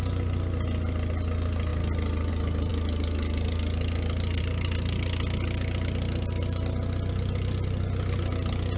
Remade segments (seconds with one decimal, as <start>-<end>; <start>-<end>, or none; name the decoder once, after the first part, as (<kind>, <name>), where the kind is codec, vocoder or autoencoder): none